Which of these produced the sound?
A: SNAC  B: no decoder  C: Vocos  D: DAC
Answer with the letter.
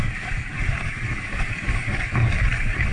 D